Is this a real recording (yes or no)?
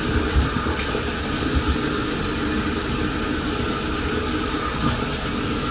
yes